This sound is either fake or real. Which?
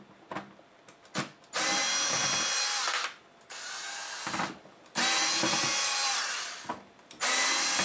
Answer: real